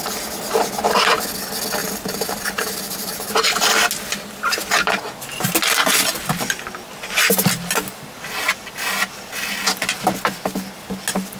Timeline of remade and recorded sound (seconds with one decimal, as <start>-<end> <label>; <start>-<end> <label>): 0.0-1.8 recorded; 1.8-3.3 remade; 3.3-11.4 recorded